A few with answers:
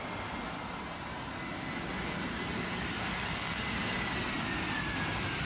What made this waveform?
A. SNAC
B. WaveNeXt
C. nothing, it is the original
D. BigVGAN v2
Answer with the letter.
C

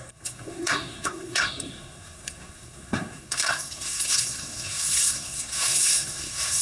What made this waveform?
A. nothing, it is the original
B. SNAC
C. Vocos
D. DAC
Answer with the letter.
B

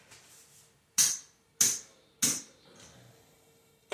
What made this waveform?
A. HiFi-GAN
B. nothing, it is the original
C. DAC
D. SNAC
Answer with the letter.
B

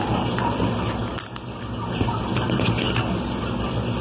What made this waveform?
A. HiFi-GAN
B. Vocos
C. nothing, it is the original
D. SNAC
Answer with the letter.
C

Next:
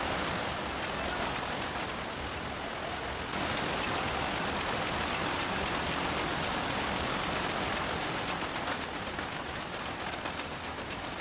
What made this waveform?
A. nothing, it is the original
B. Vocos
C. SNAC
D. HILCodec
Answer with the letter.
A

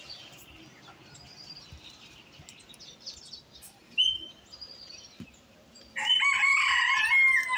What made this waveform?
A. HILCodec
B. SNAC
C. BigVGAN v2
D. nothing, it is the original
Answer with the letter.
D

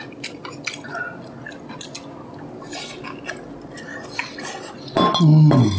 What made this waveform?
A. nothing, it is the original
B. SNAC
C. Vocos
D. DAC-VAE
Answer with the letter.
A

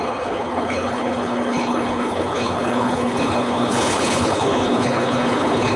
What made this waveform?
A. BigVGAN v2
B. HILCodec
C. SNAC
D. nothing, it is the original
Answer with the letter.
B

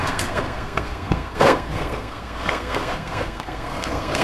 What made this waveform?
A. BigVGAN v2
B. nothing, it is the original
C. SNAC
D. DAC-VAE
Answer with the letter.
C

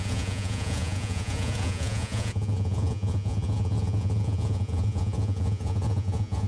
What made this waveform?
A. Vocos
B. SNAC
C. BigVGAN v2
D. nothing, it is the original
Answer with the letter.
A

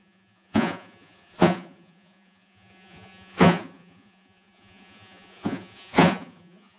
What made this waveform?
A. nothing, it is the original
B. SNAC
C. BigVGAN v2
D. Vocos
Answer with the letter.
D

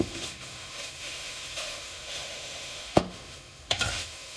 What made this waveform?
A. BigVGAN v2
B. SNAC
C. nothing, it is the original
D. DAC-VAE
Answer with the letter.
D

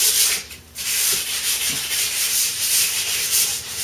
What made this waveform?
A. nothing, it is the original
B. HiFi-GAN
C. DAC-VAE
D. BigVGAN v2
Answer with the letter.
D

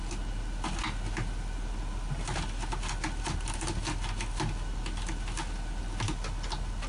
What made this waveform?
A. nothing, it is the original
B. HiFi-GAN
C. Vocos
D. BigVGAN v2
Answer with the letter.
A